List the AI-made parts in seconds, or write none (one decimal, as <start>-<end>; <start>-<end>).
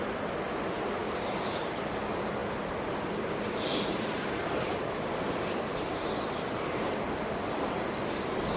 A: none